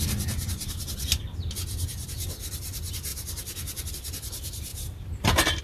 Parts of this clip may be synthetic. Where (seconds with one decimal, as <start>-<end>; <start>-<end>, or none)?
4.7-5.6